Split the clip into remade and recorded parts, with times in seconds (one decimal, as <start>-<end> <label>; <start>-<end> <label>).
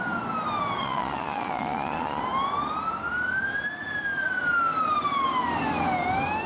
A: 0.0-0.8 recorded; 0.8-2.2 remade; 2.2-6.5 recorded